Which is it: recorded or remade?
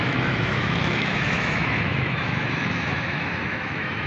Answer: remade